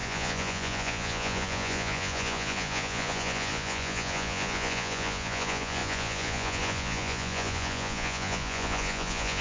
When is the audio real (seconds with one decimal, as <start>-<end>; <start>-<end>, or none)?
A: none